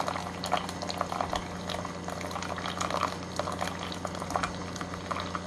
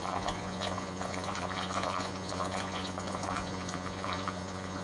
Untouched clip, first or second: first